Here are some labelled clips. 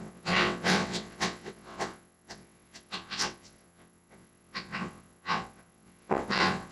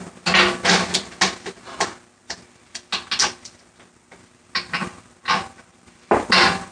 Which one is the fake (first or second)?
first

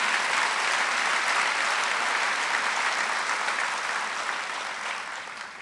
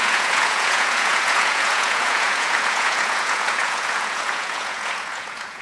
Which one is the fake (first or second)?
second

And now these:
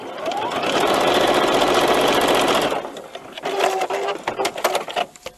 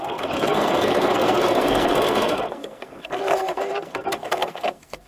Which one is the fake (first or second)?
second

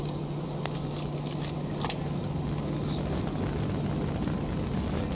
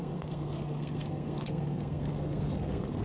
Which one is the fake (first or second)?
second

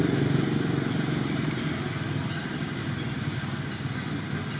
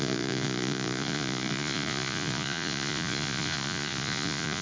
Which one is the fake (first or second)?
second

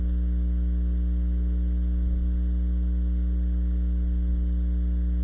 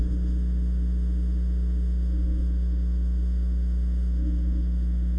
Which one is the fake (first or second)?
second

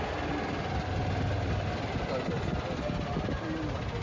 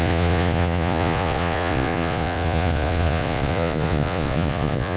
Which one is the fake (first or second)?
second